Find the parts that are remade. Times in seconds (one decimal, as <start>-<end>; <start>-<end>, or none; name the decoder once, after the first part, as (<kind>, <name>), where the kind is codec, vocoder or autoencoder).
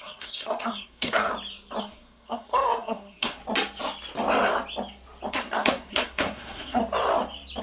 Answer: 0.0-1.3 (codec, SNAC); 1.8-3.4; 5.3-6.8